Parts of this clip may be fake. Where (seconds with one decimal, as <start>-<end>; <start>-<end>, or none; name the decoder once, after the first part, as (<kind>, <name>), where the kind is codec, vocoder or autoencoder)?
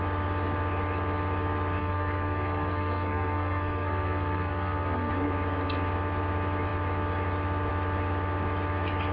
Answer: 1.8-5.1 (codec, SNAC)